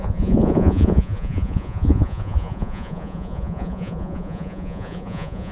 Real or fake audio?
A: fake